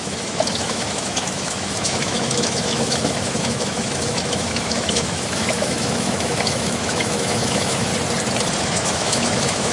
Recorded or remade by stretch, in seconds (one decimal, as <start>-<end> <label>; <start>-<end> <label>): 0.0-7.9 remade; 7.9-8.6 recorded; 8.6-9.7 remade

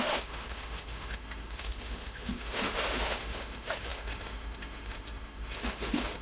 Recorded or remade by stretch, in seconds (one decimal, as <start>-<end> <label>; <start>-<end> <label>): 0.0-6.2 remade

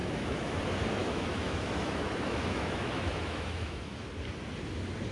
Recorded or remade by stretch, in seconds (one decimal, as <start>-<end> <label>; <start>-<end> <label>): 0.0-0.6 remade; 0.6-1.0 recorded; 1.0-4.1 remade; 4.1-5.1 recorded

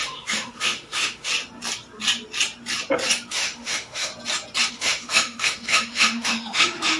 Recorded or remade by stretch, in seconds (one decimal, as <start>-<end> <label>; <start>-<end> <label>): 0.0-1.3 remade; 1.3-3.3 recorded; 3.3-4.1 remade; 4.1-4.7 recorded; 4.7-7.0 remade

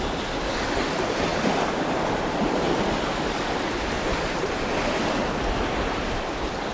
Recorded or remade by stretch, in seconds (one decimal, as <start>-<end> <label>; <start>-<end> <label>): 0.0-6.7 recorded

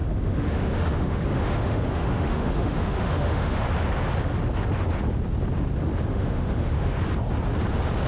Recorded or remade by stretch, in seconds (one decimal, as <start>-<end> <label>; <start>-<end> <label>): 0.0-3.6 remade; 3.6-6.1 recorded; 6.1-7.0 remade; 7.0-8.1 recorded

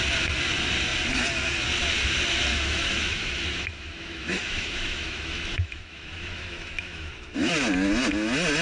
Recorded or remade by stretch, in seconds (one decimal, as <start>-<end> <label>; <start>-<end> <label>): 0.0-2.5 recorded; 2.5-7.5 remade; 7.5-8.6 recorded

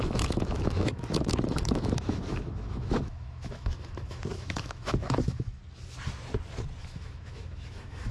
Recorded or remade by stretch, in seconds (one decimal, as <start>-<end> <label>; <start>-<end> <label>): 0.0-5.6 remade; 5.6-6.8 recorded; 6.8-8.1 remade